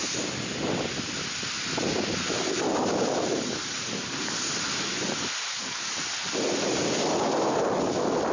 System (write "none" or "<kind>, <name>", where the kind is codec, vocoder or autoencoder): none